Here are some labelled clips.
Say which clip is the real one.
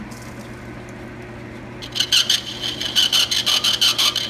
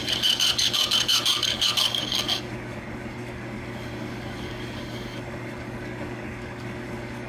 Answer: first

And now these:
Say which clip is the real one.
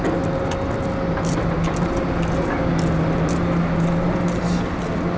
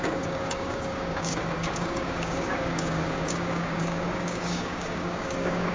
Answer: first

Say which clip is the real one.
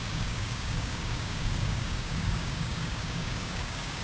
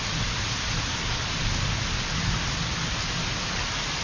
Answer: second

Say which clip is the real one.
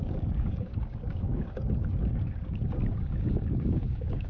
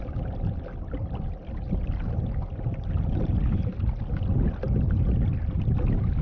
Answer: second